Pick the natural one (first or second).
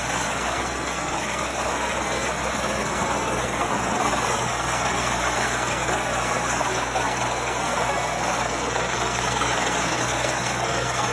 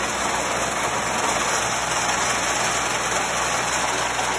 second